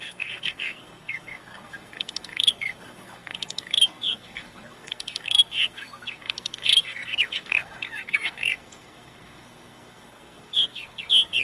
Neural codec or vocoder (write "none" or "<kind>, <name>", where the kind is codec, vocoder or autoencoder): codec, SNAC